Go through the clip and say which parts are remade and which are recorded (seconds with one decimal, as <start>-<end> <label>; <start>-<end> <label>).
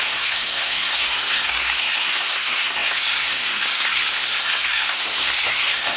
0.0-6.0 remade